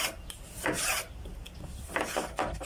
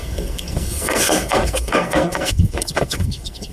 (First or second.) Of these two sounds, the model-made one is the second